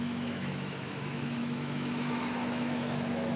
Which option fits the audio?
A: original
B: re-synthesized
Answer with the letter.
B